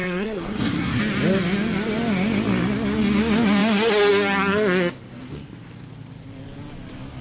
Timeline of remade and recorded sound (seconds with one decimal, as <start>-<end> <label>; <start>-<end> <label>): 0.0-1.0 remade; 1.0-7.2 recorded